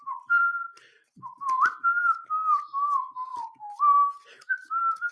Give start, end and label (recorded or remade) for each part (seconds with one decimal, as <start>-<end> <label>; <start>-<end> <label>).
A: 0.0-5.1 recorded

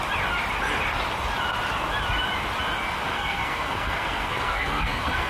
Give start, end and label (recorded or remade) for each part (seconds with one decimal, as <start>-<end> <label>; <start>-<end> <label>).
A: 0.0-3.1 recorded; 3.1-5.3 remade

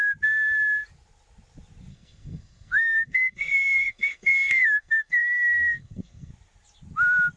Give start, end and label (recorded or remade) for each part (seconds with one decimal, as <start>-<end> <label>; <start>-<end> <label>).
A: 0.0-1.9 recorded; 1.9-6.3 remade; 6.3-7.4 recorded

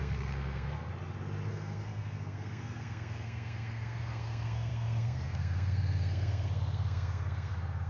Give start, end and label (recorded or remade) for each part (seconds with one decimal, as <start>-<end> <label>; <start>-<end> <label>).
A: 0.0-0.9 remade; 0.9-1.5 recorded; 1.5-7.9 remade

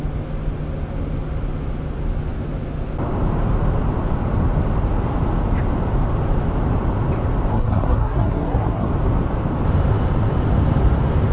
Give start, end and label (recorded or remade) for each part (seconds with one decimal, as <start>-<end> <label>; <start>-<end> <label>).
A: 0.0-7.5 recorded; 7.5-8.9 remade; 8.9-11.3 recorded

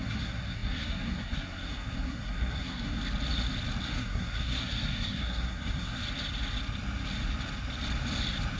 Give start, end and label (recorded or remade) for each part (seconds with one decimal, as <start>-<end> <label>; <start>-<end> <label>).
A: 0.0-3.0 remade; 3.0-3.8 recorded; 3.8-6.0 remade; 6.0-8.6 recorded